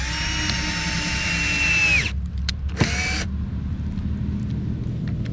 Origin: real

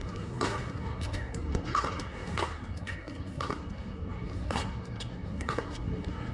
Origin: fake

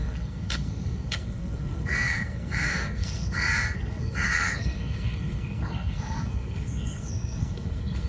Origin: fake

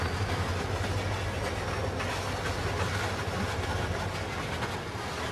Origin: real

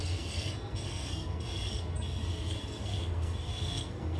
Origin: fake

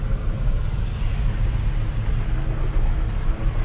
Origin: real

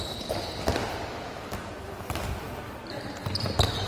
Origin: real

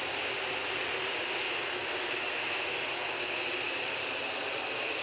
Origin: real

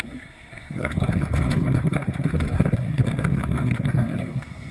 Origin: fake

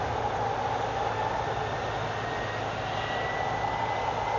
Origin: real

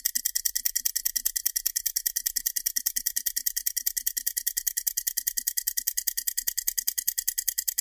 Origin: real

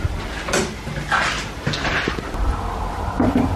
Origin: real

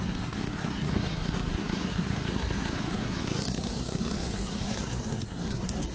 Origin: fake